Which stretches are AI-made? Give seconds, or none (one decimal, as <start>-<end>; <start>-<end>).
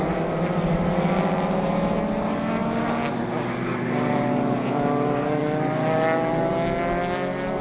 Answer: none